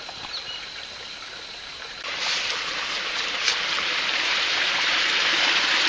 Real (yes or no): no